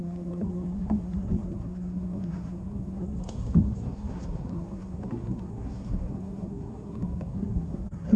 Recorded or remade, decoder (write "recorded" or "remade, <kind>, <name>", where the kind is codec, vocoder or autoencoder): remade, codec, SNAC